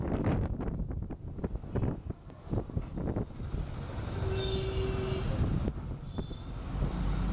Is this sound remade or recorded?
recorded